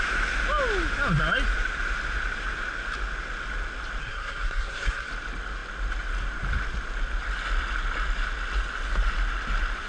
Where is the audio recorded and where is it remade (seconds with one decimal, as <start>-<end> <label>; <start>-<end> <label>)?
0.0-4.0 recorded; 4.0-5.1 remade; 5.1-9.9 recorded